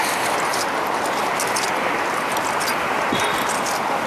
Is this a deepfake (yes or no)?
no